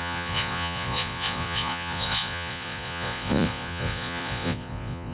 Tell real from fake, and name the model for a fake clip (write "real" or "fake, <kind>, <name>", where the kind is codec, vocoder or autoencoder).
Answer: fake, vocoder, Vocos